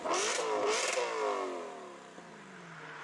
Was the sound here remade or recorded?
recorded